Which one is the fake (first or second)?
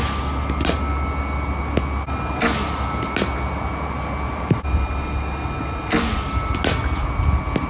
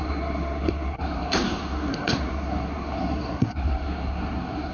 second